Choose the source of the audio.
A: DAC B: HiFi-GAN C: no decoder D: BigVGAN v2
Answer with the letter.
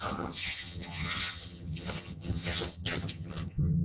B